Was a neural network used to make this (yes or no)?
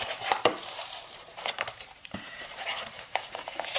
yes